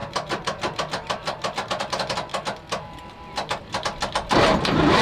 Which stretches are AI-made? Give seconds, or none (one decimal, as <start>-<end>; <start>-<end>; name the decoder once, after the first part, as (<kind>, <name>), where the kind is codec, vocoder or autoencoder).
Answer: 0.0-2.3 (vocoder, BigVGAN v2); 3.6-5.0